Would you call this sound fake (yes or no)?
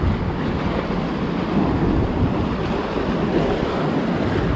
no